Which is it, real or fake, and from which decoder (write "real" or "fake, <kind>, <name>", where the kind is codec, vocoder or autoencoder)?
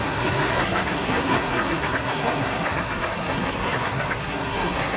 fake, codec, SNAC